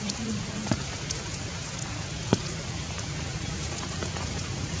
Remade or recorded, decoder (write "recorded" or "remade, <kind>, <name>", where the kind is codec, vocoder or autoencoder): remade, vocoder, Vocos